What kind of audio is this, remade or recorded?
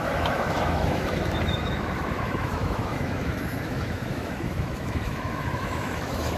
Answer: remade